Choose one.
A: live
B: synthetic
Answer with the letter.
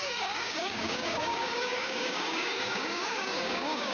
B